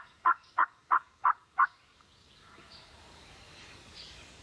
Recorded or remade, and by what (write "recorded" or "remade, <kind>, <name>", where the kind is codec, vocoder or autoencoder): remade, codec, DAC